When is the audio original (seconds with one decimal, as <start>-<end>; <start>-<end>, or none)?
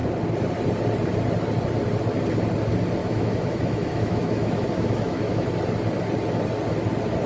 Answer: 0.0-3.0; 5.5-7.3